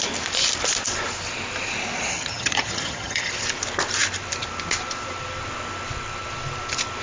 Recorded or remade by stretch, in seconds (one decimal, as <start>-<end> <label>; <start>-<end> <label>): 0.0-2.1 recorded; 2.1-3.3 remade; 3.3-7.0 recorded